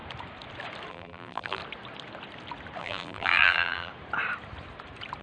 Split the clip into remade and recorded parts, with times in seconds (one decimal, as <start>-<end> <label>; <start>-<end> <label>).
0.0-0.9 recorded; 0.9-1.6 remade; 1.6-2.8 recorded; 2.8-3.9 remade; 3.9-5.2 recorded